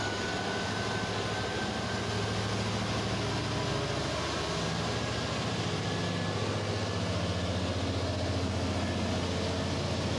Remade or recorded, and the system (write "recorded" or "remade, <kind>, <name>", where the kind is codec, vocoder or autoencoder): recorded